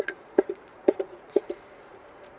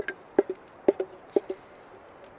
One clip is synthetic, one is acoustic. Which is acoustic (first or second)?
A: second